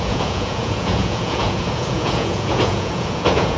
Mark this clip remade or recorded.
remade